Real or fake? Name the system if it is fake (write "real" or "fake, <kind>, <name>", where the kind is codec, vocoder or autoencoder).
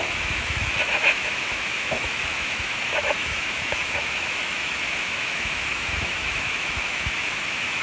fake, autoencoder, DAC-VAE